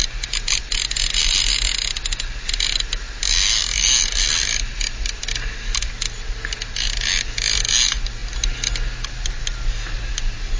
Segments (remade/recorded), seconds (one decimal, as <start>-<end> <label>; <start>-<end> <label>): 0.0-10.6 recorded

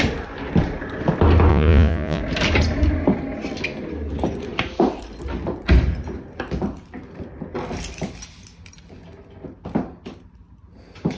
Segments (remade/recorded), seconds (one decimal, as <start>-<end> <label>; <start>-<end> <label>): 0.0-1.5 recorded; 1.5-2.2 remade; 2.2-11.2 recorded

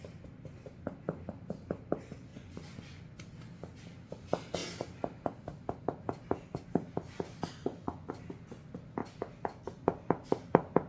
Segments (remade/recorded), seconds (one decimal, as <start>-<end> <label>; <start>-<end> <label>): 0.0-2.3 recorded; 2.3-3.0 remade; 3.0-7.6 recorded; 7.6-8.1 remade; 8.1-10.9 recorded